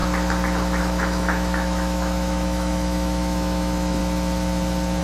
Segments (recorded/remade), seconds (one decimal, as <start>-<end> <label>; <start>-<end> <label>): 0.0-0.8 recorded; 0.8-4.0 remade; 4.0-5.0 recorded